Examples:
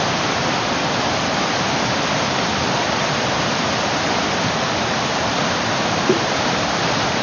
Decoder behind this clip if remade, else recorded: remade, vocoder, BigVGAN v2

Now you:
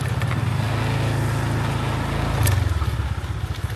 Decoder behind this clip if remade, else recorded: recorded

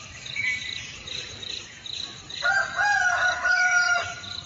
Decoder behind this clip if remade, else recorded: remade, vocoder, BigVGAN v2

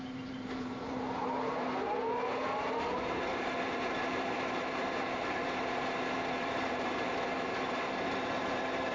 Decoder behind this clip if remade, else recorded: remade, vocoder, BigVGAN v2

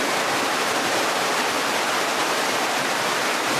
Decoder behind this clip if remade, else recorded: remade, vocoder, BigVGAN v2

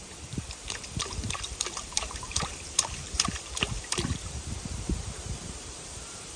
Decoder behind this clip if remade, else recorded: remade, vocoder, BigVGAN v2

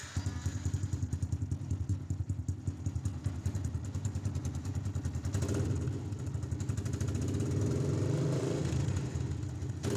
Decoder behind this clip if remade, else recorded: recorded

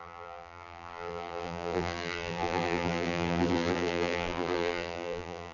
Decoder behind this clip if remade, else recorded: remade, vocoder, BigVGAN v2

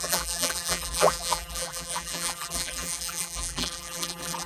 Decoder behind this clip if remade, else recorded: remade, vocoder, BigVGAN v2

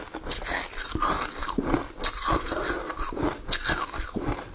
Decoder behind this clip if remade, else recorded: recorded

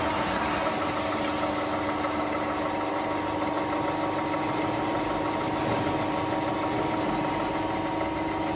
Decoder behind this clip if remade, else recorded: recorded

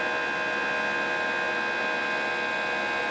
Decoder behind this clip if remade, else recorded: recorded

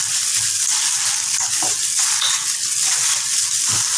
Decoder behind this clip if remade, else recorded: recorded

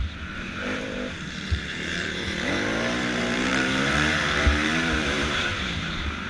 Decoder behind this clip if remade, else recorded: remade, vocoder, BigVGAN v2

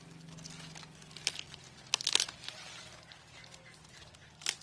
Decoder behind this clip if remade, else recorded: recorded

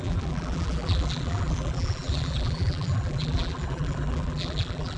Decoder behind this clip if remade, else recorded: remade, vocoder, BigVGAN v2